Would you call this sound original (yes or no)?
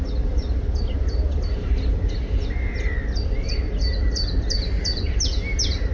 yes